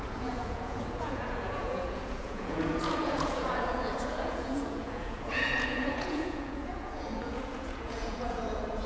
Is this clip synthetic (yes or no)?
yes